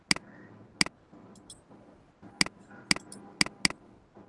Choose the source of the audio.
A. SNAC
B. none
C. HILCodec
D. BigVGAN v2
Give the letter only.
B